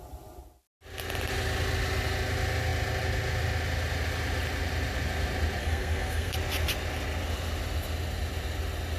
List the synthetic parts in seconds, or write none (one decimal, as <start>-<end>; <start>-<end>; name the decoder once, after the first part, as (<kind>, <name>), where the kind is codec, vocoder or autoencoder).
5.6-6.3 (codec, SNAC)